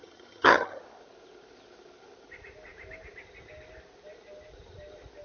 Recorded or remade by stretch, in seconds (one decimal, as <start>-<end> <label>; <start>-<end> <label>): 0.0-0.8 remade; 0.8-5.2 recorded